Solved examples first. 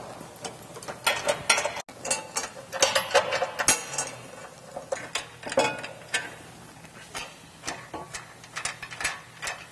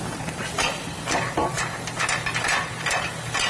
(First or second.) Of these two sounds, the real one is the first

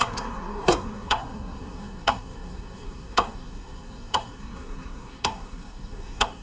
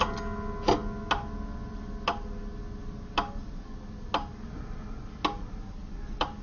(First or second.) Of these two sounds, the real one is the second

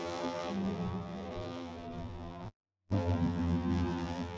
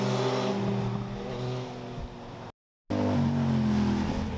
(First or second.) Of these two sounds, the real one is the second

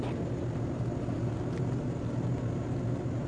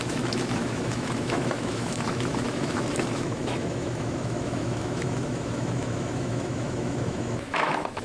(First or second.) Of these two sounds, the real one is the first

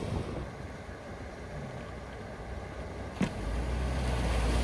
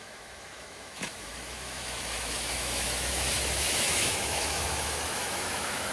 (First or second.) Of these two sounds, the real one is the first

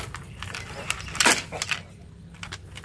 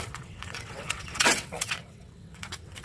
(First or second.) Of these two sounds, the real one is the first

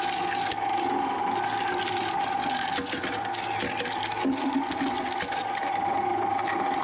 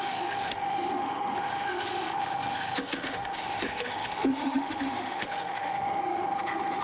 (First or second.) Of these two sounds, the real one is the first